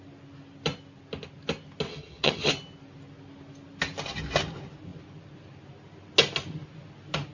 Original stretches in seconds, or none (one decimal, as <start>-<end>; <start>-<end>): 0.0-1.9; 2.5-7.3